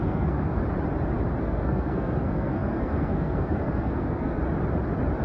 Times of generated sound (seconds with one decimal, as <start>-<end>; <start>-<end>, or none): 0.0-0.6; 1.4-4.4